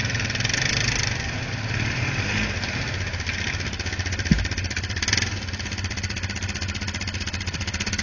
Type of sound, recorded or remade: recorded